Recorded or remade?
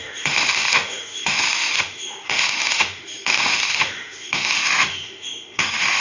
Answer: remade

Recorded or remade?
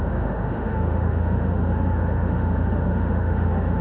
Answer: remade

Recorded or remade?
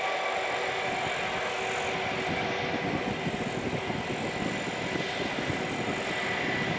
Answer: recorded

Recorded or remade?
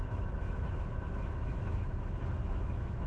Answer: remade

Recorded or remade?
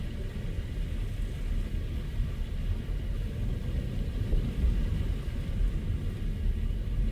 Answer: recorded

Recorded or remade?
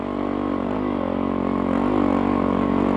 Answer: recorded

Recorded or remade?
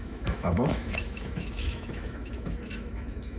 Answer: remade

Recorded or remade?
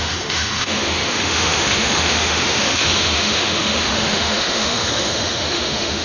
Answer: remade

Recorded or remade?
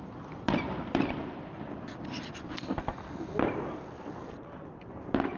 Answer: recorded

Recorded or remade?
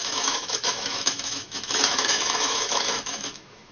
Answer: remade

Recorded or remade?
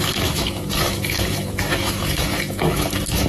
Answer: remade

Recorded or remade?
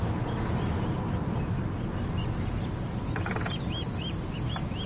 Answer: recorded